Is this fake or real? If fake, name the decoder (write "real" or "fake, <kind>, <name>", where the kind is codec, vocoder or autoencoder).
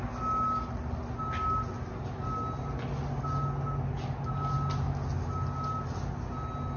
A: real